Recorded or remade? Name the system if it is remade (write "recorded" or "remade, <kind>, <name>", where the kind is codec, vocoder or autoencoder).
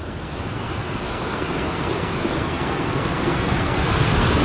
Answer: remade, codec, SNAC